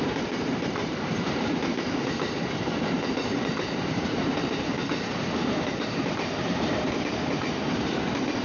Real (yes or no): no